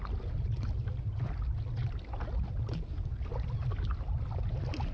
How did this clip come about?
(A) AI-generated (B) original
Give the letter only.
B